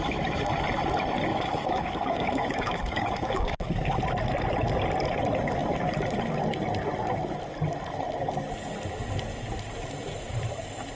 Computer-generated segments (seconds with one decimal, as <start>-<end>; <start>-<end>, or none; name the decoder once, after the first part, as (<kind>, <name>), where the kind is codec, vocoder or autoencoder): 1.3-4.0 (codec, DAC)